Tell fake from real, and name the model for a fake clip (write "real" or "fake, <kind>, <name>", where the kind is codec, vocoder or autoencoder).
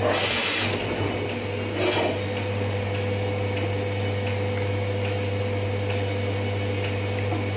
real